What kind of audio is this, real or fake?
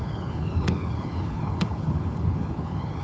fake